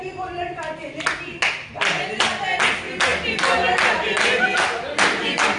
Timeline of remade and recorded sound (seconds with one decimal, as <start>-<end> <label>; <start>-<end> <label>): 0.0-5.6 recorded

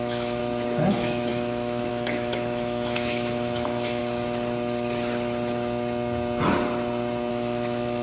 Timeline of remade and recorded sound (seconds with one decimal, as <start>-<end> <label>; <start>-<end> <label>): 0.0-0.4 remade; 0.4-0.9 recorded; 0.9-4.0 remade; 4.0-7.3 recorded; 7.3-8.0 remade

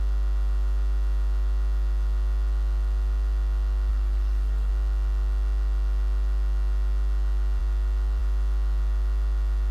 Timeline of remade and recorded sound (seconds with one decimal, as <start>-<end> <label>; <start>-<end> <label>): 0.0-3.9 recorded; 3.9-4.7 remade; 4.7-9.7 recorded

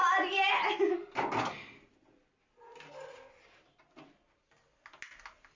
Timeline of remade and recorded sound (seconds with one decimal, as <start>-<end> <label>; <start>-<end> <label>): 0.0-5.6 recorded